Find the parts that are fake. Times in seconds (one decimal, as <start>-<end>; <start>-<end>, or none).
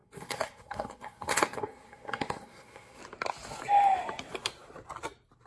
0.0-3.0